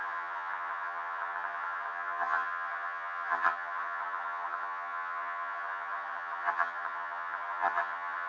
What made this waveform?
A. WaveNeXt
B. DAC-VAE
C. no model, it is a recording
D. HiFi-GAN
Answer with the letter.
D